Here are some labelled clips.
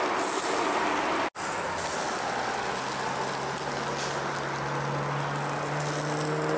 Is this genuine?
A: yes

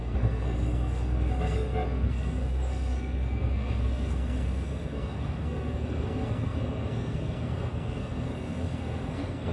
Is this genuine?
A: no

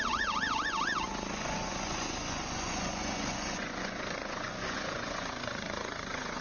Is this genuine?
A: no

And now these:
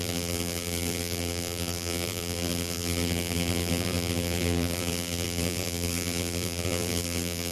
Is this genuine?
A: no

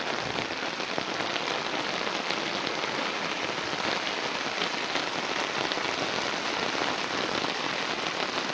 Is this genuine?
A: yes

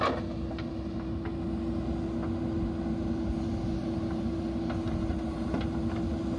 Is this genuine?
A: yes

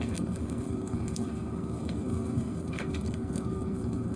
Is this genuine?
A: no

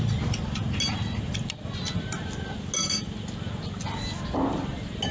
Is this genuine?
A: yes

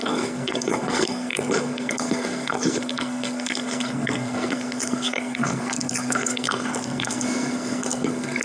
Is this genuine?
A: no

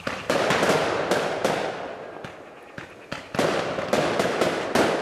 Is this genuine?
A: yes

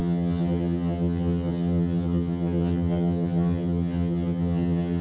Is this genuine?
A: no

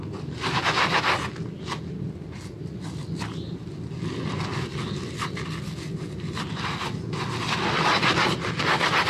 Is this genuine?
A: yes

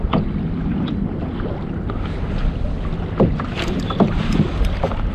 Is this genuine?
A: yes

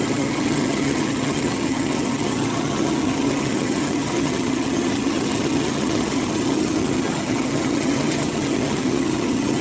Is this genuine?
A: no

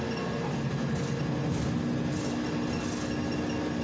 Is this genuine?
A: yes